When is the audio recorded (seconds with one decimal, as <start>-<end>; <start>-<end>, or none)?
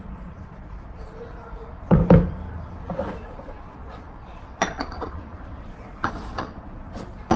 2.0-3.1